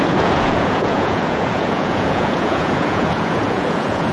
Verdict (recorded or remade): remade